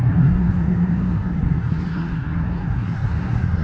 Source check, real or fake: fake